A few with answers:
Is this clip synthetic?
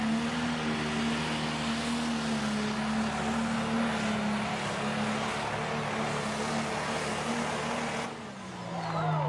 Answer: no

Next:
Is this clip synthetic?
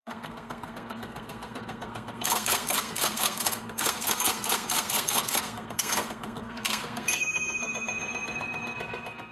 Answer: yes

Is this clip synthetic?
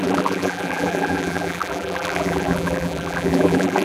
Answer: yes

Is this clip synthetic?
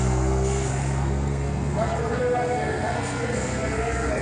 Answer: yes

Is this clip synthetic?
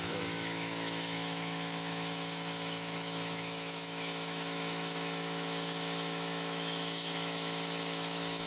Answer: yes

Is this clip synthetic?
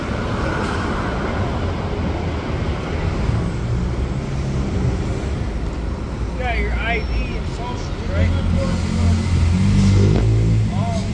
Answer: no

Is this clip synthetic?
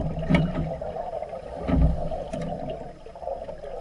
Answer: no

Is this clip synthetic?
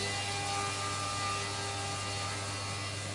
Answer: no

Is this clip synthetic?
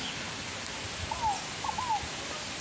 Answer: no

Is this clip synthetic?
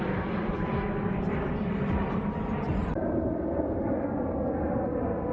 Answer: no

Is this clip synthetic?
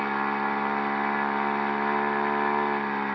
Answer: no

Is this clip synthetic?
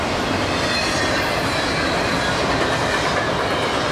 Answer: no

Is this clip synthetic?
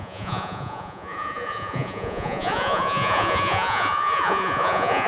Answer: yes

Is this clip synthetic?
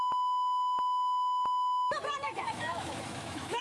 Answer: yes